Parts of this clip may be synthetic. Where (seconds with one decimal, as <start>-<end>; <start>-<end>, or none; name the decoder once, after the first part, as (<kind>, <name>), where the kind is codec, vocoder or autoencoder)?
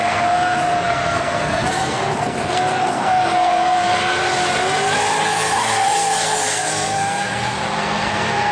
0.0-4.2 (codec, SNAC); 5.2-8.5